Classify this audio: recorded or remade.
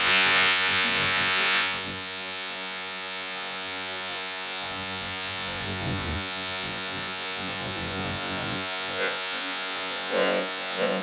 remade